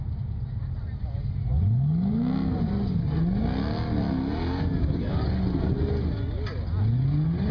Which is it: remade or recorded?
recorded